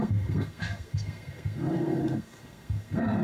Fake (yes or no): yes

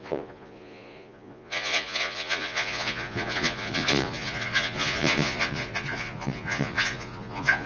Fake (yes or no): yes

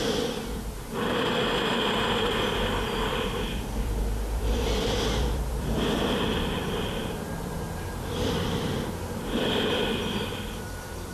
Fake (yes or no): yes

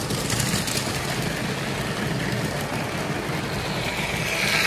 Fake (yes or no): no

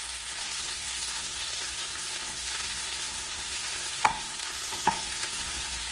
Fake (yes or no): yes